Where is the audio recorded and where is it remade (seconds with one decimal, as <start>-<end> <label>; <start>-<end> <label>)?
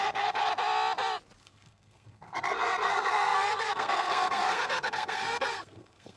0.0-0.5 remade; 0.5-1.4 recorded; 1.4-6.2 remade